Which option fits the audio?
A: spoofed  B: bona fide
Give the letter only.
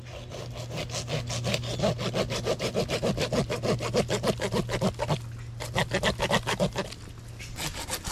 B